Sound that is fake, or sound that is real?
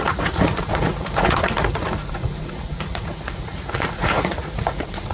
fake